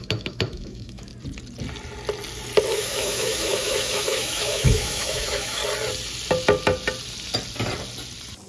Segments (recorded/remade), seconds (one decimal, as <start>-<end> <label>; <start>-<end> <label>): 0.0-1.1 remade; 1.1-2.7 recorded; 2.7-5.6 remade; 5.6-8.5 recorded